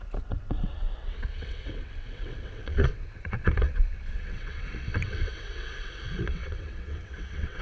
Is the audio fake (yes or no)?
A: yes